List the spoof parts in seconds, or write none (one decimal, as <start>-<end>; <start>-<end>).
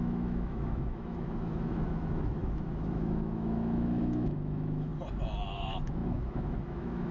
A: 0.0-4.9; 5.5-7.1